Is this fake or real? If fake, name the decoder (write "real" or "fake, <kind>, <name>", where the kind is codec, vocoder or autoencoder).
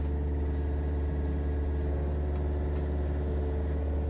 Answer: real